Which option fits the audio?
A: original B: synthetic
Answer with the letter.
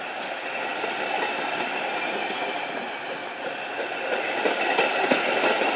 A